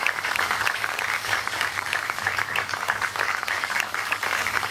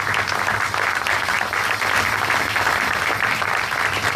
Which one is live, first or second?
second